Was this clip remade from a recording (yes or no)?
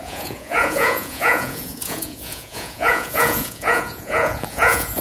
yes